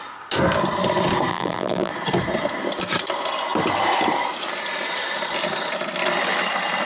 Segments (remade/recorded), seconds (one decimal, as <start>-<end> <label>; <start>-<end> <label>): 0.0-1.3 recorded; 1.3-1.9 remade; 1.9-6.9 recorded